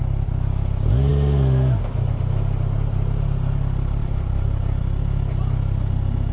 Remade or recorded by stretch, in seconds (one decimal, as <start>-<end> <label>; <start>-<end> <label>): 0.0-4.0 recorded; 4.0-4.8 remade; 4.8-6.3 recorded